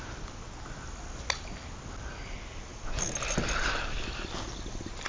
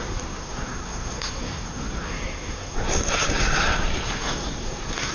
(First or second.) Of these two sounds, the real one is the first